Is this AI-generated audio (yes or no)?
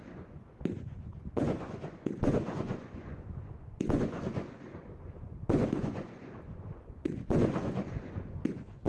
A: yes